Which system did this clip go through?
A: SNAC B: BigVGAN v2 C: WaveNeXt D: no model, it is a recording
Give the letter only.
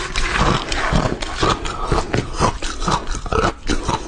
D